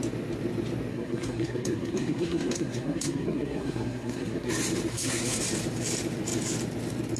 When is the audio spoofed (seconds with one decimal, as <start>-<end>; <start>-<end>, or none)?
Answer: 0.9-4.5; 4.9-5.4